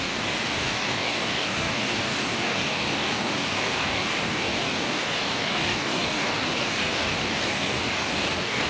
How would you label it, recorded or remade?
remade